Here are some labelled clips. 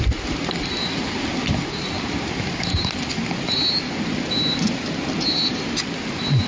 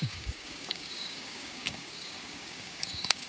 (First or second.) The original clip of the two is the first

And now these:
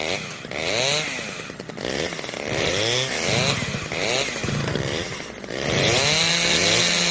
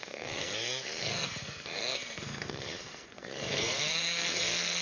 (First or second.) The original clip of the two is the first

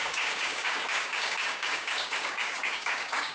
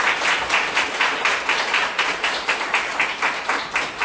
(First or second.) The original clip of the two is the second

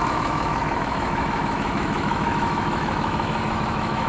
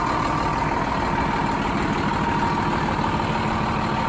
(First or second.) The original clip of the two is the second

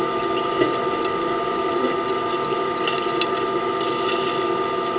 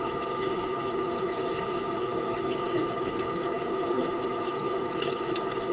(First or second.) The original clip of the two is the first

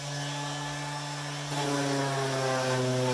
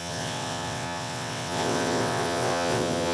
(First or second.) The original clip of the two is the first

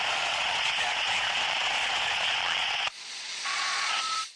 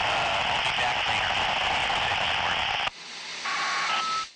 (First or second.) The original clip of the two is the second